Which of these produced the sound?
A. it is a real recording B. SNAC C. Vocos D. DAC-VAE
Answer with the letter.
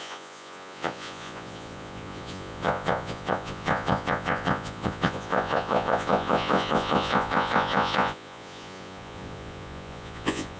C